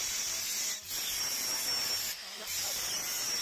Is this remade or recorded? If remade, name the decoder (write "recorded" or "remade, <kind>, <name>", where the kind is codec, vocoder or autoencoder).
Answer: recorded